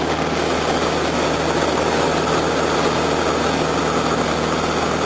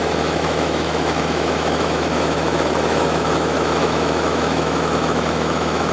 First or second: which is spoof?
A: second